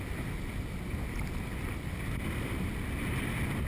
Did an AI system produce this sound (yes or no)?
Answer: no